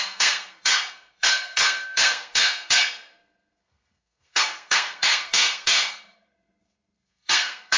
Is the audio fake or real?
fake